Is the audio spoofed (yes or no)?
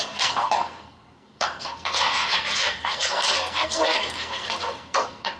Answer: yes